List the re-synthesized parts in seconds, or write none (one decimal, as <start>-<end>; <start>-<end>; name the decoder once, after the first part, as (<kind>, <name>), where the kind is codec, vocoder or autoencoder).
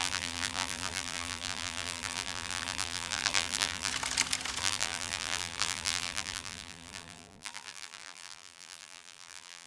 0.0-3.9 (vocoder, BigVGAN v2); 4.6-9.7